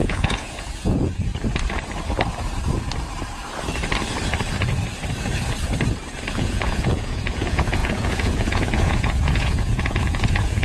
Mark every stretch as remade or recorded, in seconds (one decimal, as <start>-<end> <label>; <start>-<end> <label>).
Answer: 0.0-1.3 remade; 1.3-6.3 recorded; 6.3-10.6 remade